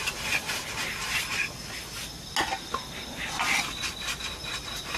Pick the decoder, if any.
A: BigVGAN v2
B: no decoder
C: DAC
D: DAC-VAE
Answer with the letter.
B